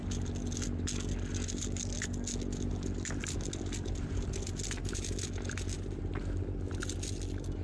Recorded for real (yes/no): yes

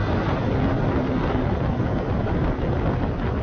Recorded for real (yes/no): yes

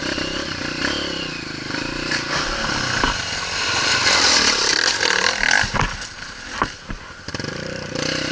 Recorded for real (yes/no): no